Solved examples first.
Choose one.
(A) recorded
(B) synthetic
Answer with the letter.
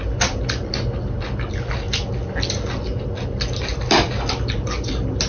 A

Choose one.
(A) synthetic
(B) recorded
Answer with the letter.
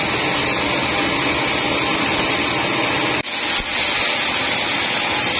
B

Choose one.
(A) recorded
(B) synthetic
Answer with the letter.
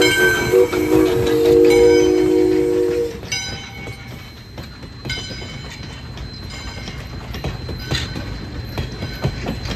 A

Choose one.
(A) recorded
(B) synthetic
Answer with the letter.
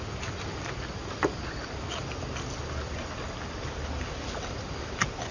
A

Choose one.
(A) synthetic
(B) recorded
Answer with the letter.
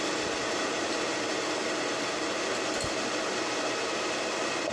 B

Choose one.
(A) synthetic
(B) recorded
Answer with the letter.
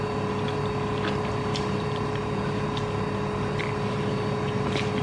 B